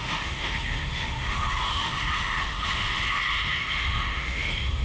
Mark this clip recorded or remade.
remade